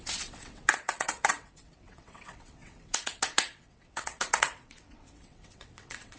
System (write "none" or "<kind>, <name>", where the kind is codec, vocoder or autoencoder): vocoder, WaveNeXt